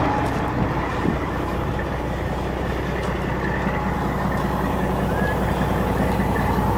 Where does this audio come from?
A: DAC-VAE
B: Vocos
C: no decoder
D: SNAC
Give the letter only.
C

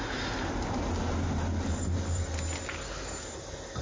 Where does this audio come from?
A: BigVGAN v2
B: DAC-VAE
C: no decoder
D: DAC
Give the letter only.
C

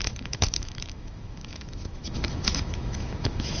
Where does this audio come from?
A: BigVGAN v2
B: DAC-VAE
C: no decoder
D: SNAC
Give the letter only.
B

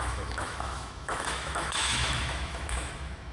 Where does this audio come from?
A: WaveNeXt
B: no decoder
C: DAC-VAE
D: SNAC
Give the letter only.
C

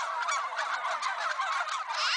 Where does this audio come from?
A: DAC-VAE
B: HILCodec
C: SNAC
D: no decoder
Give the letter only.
D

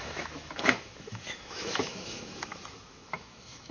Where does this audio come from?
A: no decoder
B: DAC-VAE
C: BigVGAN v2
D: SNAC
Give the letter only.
B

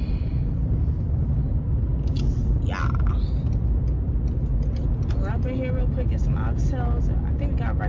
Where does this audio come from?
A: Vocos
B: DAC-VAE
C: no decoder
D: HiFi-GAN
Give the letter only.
C